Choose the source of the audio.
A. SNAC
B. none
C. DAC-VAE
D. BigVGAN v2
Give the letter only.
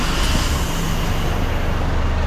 B